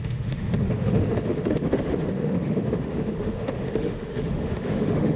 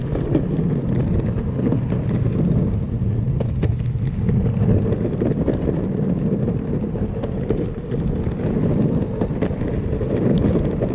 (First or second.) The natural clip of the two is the second